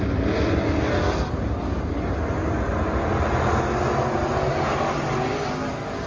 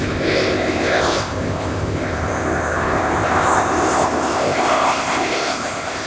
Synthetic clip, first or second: second